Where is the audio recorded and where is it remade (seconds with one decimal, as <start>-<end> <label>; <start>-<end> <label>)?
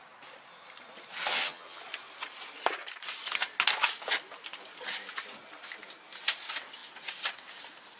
0.0-1.3 recorded; 1.3-1.8 remade; 1.8-8.0 recorded